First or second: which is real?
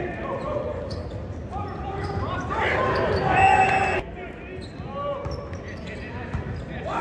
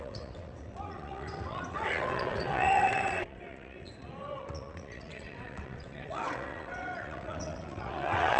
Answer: first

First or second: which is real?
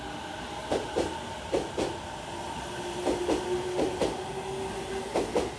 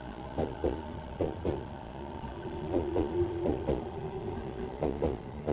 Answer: first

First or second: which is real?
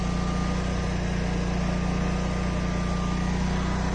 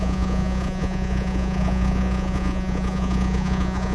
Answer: first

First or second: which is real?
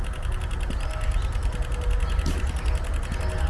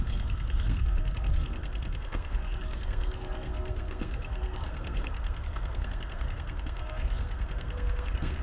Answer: first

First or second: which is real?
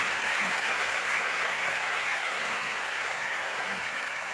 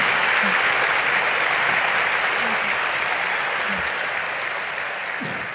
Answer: second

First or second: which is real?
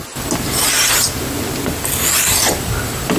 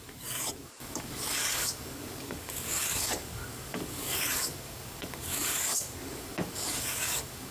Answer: first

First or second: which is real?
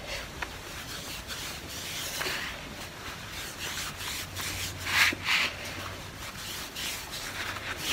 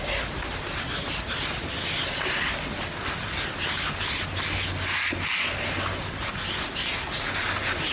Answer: second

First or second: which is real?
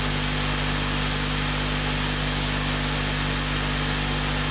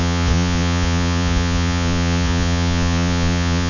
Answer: first